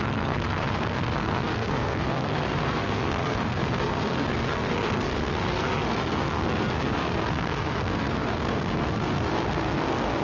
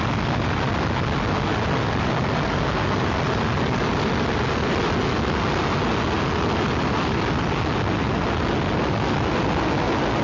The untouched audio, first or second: second